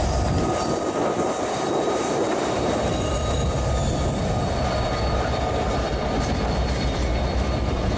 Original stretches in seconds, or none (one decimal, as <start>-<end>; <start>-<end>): none